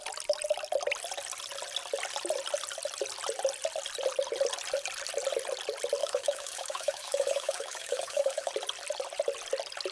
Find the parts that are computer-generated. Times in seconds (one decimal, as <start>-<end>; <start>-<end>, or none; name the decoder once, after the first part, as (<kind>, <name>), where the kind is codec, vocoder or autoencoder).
6.0-8.5 (autoencoder, DAC-VAE)

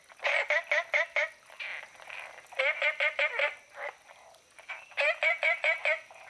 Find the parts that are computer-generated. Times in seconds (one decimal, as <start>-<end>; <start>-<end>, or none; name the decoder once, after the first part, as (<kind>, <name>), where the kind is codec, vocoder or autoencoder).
none

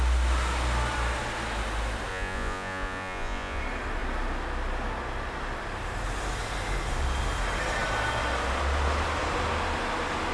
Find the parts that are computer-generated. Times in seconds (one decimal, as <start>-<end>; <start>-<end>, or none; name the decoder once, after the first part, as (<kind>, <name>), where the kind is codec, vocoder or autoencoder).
2.1-3.6 (vocoder, Vocos)